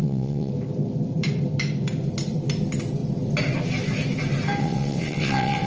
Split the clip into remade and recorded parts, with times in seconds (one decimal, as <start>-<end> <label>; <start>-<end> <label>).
0.0-0.5 remade; 0.5-4.6 recorded; 4.6-5.7 remade